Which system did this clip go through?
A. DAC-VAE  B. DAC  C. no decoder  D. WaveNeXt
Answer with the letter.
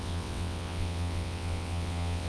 D